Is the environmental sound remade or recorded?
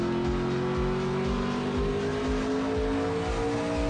recorded